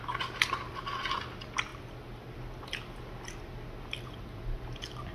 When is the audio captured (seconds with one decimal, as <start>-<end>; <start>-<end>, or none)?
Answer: 0.0-5.1